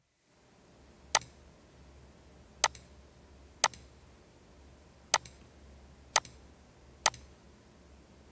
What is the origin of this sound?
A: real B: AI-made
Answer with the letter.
A